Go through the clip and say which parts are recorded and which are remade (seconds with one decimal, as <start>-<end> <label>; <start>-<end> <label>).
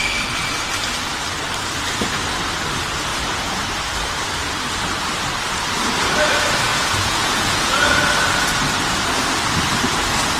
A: 0.0-3.1 recorded; 3.1-3.6 remade; 3.6-6.7 recorded; 6.7-8.0 remade; 8.0-10.4 recorded